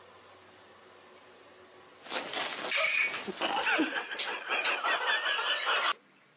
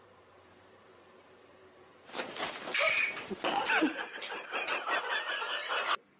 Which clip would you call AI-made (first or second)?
second